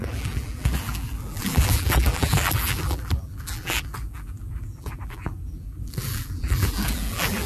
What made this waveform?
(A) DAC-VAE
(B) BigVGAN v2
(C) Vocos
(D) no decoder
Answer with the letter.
B